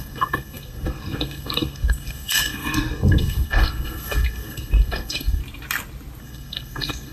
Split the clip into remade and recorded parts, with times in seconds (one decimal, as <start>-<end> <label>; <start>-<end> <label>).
0.0-5.4 remade; 5.4-6.2 recorded; 6.2-7.1 remade